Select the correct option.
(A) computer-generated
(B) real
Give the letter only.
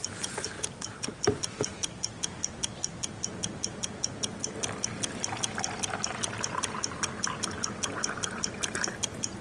B